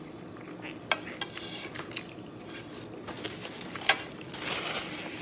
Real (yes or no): yes